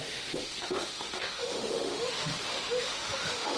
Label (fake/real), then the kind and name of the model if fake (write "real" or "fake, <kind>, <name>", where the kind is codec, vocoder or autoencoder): fake, autoencoder, DAC-VAE